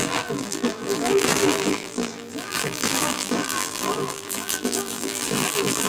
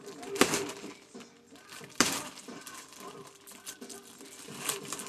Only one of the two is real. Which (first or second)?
second